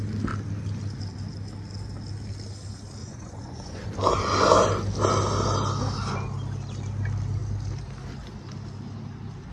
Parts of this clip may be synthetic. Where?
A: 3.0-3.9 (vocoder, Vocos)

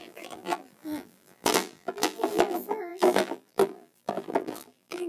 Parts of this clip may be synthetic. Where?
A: 0.0-5.1 (vocoder, BigVGAN v2)

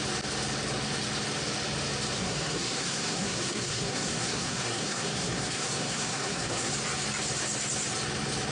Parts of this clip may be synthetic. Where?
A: 2.2-6.7 (codec, SNAC)

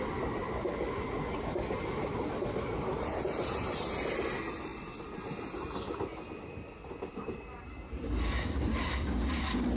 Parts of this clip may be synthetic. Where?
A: 4.7-9.8 (vocoder, BigVGAN v2)